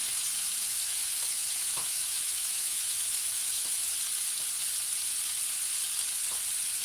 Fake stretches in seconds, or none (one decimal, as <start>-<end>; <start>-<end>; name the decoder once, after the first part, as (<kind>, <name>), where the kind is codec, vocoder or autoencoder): 0.0-4.0 (autoencoder, DAC-VAE)